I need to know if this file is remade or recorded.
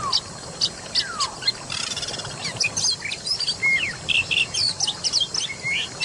recorded